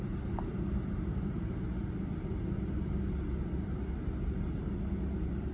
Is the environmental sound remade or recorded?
recorded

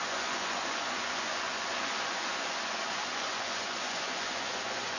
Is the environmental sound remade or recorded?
remade